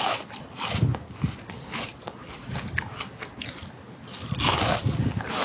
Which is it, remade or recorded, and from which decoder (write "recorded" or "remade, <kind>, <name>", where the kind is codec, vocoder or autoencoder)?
recorded